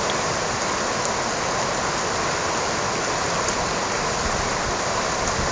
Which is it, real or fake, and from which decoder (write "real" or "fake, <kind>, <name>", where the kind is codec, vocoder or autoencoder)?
real